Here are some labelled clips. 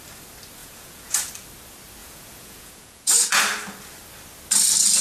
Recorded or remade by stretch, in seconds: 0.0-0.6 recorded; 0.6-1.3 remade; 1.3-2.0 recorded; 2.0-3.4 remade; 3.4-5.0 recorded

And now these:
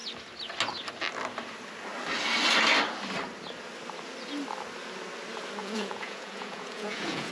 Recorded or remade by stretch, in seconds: 0.0-5.6 recorded; 5.6-7.3 remade

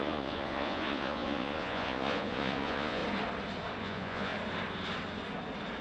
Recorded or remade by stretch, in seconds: 0.0-3.0 remade; 3.0-3.8 recorded; 3.8-4.3 remade; 4.3-5.8 recorded